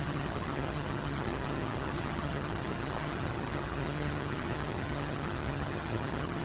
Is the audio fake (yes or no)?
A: yes